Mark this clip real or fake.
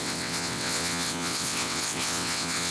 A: fake